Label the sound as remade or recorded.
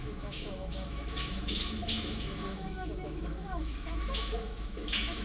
remade